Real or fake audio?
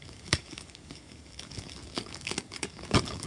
fake